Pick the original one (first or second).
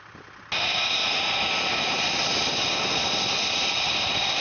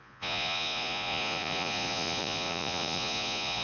first